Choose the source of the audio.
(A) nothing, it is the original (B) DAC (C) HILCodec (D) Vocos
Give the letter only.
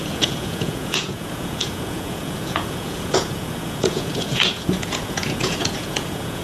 D